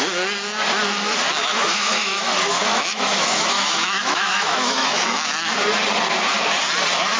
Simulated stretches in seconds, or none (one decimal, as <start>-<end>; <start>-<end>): 1.4-5.5

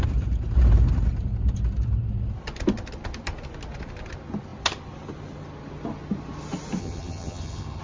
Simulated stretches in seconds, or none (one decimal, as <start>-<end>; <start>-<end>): 6.8-7.8

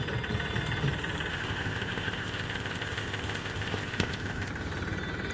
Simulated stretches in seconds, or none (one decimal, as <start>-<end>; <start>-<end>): 1.3-4.5

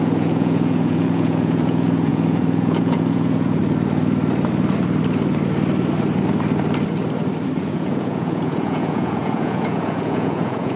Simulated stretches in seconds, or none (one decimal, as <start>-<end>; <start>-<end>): 0.0-3.6; 7.6-10.8

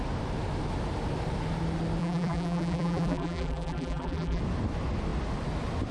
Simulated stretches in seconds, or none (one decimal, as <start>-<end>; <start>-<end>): 2.0-4.4

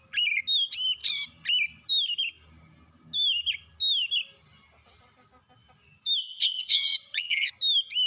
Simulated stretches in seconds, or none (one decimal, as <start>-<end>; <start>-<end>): 6.2-7.5

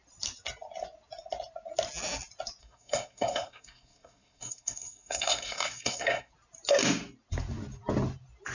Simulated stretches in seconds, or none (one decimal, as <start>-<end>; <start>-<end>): 2.6-6.3

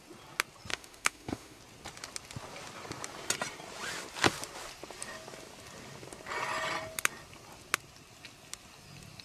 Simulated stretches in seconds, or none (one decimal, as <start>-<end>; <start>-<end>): 0.7-1.6